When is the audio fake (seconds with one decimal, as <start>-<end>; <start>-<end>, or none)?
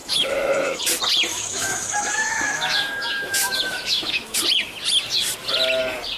0.0-0.8; 1.3-4.4